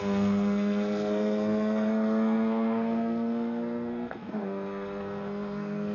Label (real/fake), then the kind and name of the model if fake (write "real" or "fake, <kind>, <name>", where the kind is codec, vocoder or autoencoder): fake, codec, SNAC